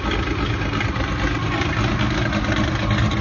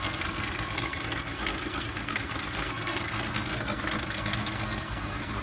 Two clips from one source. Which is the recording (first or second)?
first